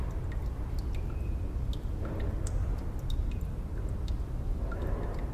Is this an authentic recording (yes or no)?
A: yes